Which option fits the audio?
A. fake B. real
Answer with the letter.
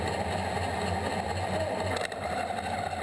B